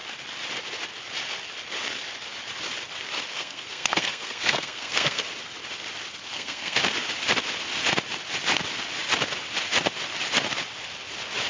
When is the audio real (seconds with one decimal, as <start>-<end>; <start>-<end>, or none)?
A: 0.0-3.3; 5.2-6.3; 6.8-11.5